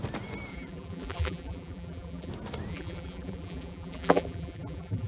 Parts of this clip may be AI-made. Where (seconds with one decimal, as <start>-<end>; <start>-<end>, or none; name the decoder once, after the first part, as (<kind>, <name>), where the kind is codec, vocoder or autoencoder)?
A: 0.5-2.3 (vocoder, BigVGAN v2); 2.7-5.1